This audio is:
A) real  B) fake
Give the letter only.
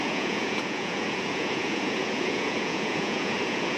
B